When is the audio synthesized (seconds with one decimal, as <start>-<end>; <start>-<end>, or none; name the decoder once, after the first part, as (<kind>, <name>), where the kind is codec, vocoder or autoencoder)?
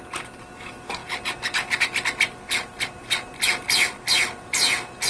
none